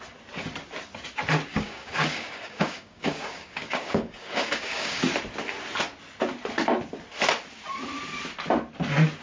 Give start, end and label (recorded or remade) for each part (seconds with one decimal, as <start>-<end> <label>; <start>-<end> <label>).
0.0-1.5 recorded; 1.5-5.0 remade; 5.0-9.2 recorded